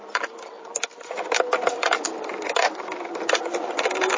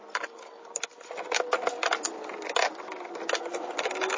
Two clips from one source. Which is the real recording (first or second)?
second